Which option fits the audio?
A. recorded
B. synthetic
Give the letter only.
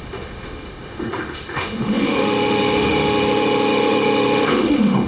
B